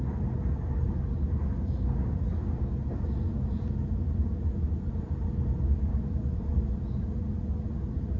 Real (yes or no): yes